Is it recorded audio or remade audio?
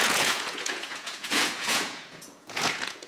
remade